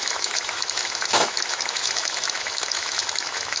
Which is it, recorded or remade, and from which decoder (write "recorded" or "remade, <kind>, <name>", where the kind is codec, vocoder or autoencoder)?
remade, autoencoder, DAC-VAE